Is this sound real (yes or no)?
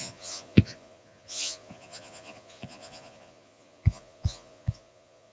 no